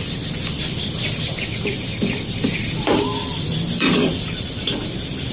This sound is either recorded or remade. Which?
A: remade